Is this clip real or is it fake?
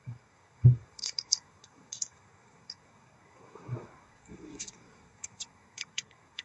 fake